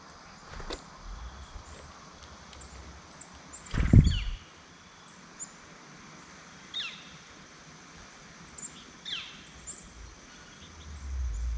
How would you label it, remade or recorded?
recorded